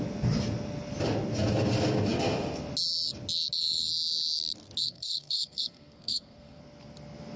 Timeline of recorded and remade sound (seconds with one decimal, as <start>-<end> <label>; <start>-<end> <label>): 0.0-4.8 recorded; 4.8-6.6 remade; 6.6-7.4 recorded